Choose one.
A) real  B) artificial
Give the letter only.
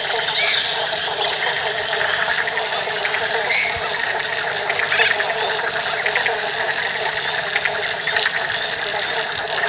A